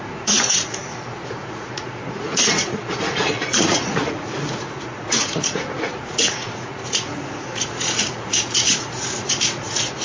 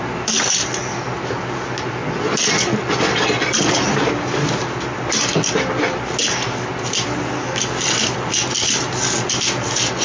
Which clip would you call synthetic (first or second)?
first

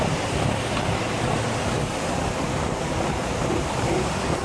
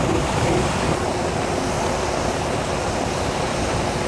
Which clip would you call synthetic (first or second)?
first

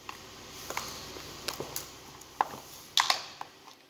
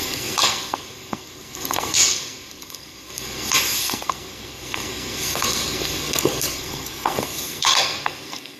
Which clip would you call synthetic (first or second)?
second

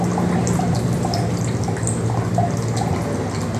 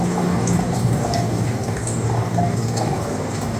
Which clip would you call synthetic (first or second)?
second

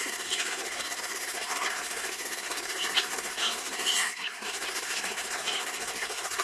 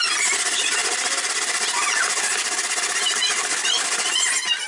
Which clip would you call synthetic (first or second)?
first